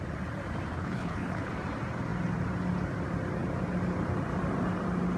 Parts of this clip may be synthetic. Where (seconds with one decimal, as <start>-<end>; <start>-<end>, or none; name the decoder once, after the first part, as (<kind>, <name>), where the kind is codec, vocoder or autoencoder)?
0.7-1.5 (codec, HILCodec)